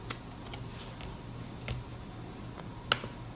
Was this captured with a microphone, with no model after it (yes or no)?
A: yes